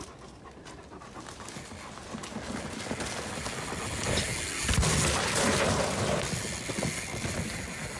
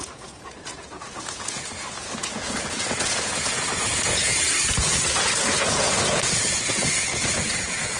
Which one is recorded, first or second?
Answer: first